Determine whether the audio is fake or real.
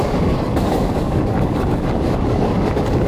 fake